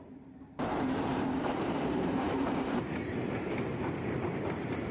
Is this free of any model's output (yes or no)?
no